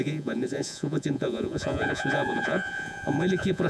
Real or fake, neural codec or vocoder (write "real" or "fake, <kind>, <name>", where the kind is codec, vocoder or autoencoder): fake, vocoder, Vocos